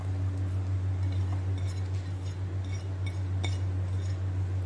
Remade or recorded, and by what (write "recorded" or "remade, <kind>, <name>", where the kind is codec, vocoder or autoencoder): recorded